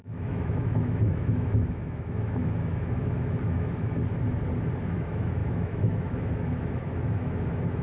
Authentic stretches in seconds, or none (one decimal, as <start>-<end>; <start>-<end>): 4.0-4.8